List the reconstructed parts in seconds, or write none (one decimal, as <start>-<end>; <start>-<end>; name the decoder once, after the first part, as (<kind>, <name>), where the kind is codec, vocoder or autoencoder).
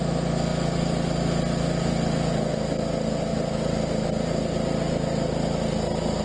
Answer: none